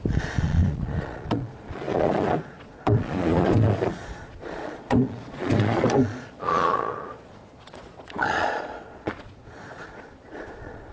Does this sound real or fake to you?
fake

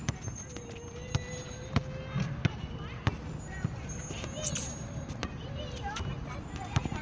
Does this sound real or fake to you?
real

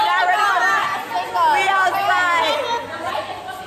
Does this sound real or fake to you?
real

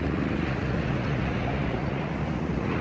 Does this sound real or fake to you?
fake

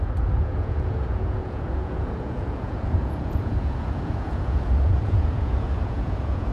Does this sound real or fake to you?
fake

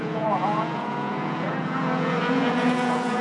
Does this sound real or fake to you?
fake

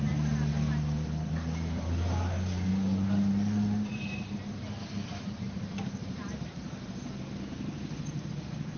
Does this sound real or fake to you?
real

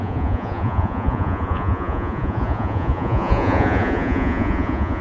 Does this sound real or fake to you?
fake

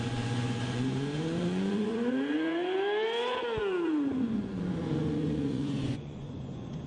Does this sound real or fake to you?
fake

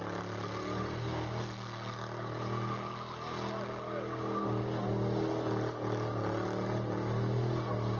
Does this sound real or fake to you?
real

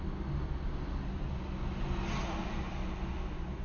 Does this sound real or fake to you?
real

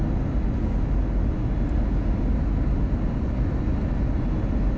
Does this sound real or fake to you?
real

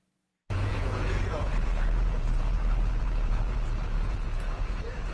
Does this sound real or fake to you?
fake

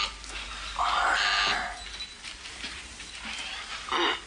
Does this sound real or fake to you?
real